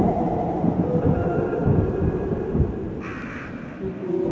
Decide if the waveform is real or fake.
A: fake